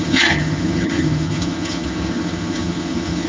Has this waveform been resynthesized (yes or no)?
yes